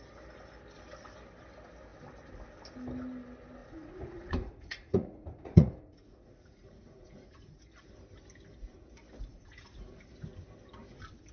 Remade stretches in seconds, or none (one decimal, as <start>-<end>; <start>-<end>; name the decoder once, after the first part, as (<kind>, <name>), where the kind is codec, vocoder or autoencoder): 3.6-7.6 (vocoder, Vocos); 9.3-10.1